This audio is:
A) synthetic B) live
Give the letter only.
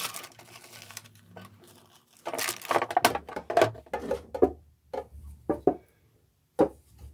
B